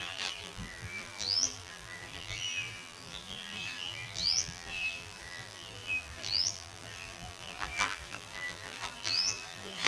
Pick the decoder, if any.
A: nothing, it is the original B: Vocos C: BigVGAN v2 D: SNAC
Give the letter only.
C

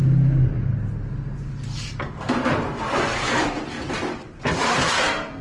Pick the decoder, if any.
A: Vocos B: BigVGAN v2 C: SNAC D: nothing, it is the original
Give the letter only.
D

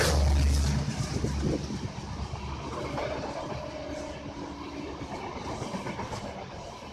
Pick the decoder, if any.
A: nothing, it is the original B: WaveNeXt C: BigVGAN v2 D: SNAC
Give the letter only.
A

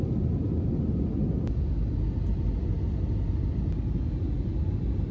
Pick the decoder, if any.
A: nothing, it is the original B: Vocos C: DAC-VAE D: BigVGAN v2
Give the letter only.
A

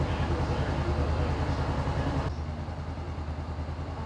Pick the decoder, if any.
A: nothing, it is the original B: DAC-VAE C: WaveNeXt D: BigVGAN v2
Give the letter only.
A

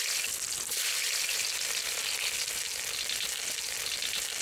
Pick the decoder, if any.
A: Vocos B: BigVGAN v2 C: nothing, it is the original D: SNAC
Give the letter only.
C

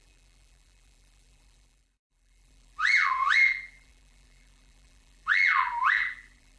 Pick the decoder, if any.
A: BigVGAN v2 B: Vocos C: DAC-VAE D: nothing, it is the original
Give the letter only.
A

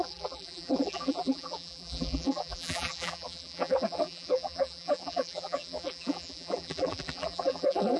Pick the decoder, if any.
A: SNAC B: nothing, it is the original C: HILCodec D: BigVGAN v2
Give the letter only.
D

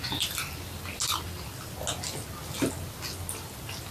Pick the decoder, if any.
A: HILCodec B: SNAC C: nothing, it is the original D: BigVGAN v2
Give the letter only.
C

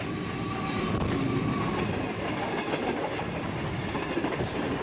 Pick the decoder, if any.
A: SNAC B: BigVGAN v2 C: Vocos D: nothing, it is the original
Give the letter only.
D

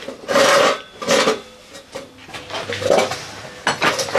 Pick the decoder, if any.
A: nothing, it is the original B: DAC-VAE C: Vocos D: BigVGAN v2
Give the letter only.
A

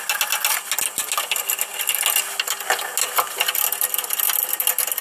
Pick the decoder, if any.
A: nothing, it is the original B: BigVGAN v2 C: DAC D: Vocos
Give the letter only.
A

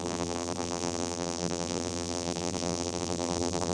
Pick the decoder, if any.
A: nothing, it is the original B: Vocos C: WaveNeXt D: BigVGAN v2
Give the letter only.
D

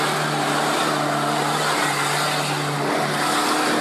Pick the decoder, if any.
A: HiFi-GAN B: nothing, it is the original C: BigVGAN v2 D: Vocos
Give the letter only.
B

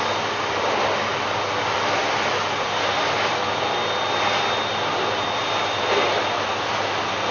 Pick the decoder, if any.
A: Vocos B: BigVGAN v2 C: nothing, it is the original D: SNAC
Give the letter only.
C